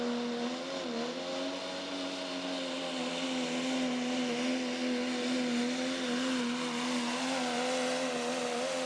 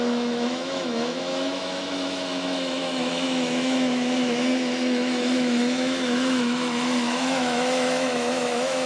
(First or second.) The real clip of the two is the first